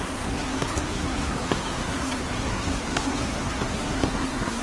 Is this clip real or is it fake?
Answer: fake